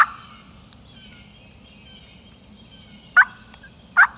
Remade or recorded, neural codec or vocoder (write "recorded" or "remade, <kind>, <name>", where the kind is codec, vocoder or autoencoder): recorded